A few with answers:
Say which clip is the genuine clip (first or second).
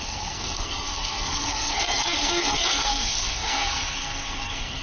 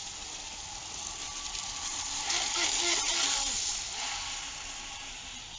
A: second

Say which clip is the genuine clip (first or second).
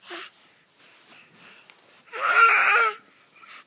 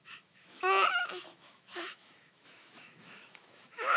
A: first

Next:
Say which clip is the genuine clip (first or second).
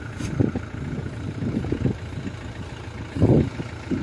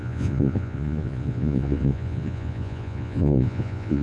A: first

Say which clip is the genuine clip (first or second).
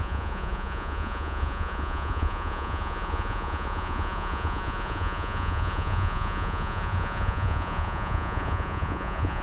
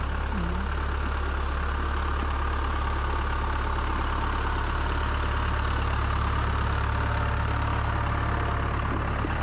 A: second